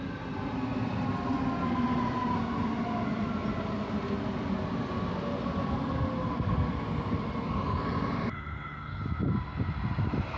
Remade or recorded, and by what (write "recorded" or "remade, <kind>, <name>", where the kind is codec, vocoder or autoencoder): recorded